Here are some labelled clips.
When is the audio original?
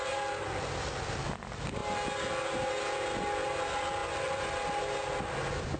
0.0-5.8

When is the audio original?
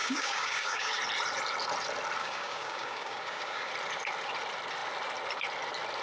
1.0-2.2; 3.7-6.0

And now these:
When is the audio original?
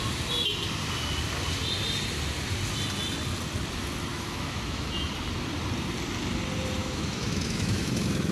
0.0-4.1; 5.1-6.8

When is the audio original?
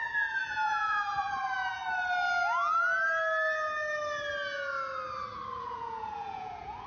1.8-5.6